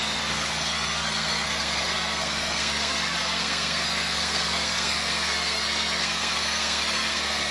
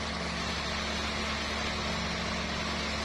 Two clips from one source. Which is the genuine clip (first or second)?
second